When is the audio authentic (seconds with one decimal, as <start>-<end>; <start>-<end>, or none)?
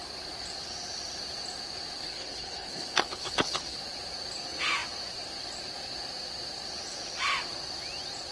0.0-2.0; 3.8-8.3